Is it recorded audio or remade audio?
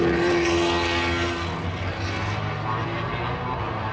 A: recorded